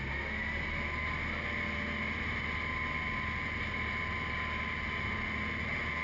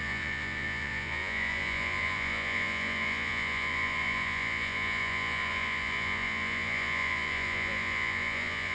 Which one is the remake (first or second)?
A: second